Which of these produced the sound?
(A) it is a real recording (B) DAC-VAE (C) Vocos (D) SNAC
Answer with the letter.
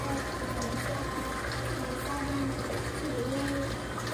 A